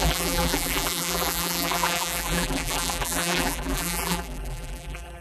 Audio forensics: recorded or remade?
remade